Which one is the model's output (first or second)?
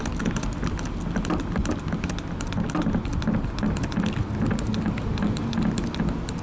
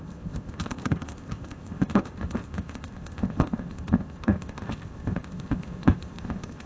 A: second